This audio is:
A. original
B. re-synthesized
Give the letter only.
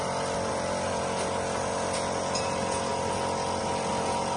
A